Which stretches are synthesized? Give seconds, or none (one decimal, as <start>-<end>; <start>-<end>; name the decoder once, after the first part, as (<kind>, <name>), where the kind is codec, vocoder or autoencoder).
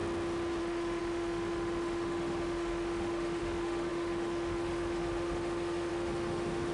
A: 0.6-6.7 (autoencoder, DAC-VAE)